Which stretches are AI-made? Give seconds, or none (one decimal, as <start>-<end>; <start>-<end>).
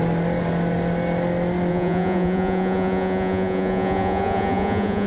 1.7-5.1